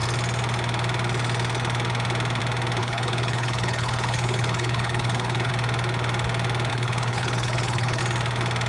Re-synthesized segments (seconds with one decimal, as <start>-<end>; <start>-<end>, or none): 2.8-5.5; 6.7-8.0